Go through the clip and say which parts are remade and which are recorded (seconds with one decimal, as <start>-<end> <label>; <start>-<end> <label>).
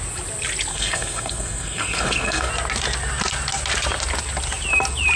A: 0.0-0.7 recorded; 0.7-2.5 remade; 2.5-5.2 recorded